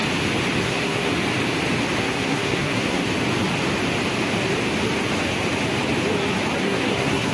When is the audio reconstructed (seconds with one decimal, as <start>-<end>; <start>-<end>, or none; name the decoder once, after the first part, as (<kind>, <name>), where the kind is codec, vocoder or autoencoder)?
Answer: 0.6-1.1 (codec, SNAC); 2.0-3.1; 6.6-7.3